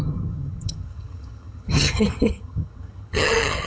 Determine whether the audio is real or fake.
fake